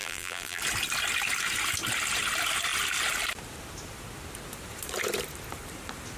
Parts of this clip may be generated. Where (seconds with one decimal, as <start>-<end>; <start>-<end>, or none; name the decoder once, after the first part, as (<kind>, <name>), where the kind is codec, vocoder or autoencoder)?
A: 0.0-0.6 (vocoder, BigVGAN v2)